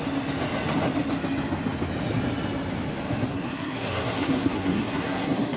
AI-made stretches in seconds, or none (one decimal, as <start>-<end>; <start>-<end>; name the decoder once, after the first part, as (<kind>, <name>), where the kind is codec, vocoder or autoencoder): 3.3-5.6 (codec, SNAC)